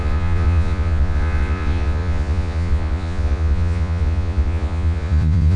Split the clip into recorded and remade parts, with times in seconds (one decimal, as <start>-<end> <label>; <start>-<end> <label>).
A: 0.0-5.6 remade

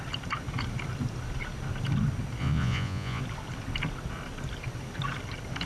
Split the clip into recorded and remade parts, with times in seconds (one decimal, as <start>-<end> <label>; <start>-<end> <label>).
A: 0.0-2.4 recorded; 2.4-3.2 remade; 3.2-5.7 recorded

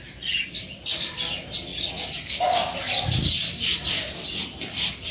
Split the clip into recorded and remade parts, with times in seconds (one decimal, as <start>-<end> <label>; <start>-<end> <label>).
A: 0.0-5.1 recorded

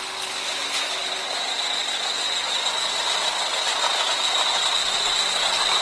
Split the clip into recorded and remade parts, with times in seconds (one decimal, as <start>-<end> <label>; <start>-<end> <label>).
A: 0.0-5.8 recorded